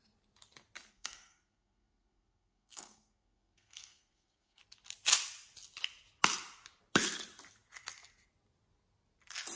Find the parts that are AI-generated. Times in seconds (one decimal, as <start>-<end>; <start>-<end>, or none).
0.9-4.6